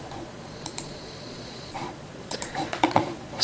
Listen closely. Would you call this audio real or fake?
fake